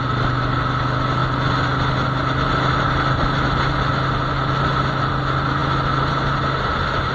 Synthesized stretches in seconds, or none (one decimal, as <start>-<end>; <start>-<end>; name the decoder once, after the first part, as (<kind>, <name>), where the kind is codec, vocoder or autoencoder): none